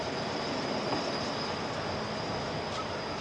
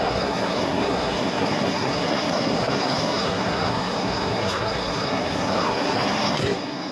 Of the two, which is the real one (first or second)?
first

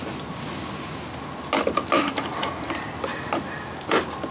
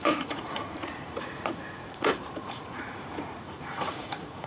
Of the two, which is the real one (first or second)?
first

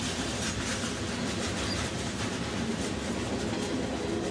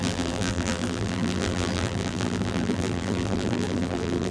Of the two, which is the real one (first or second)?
first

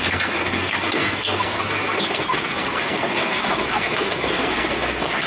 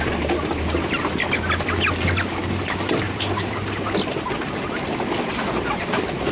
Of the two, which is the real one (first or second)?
second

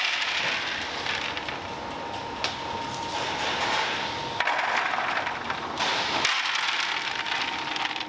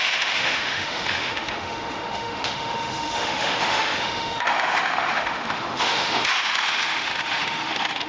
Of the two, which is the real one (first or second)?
first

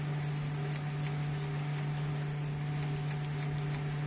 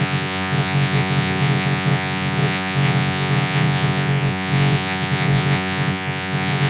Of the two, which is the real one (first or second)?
first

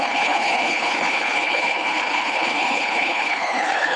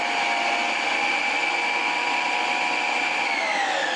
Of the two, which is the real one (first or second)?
second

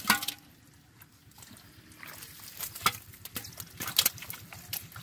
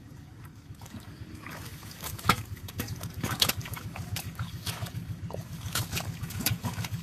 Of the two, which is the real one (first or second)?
first